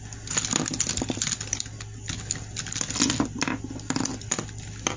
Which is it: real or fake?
real